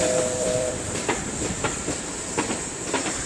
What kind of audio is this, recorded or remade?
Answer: remade